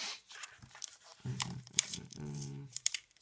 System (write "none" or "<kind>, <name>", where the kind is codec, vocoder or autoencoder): vocoder, BigVGAN v2